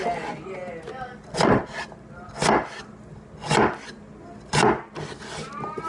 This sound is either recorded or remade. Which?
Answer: recorded